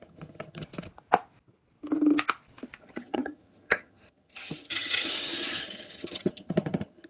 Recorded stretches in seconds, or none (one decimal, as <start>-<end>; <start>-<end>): 0.7-2.8